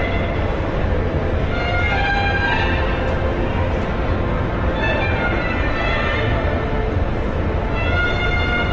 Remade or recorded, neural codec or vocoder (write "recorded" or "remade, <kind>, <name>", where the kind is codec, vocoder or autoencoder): recorded